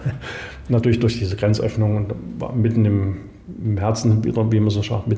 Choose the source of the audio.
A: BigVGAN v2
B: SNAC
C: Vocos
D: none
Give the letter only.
D